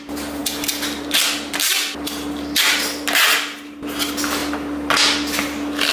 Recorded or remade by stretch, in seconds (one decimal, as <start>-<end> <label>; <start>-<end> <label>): 0.0-5.9 recorded